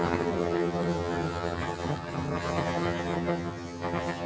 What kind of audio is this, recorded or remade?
remade